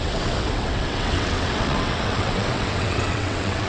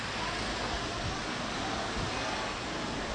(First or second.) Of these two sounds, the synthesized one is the first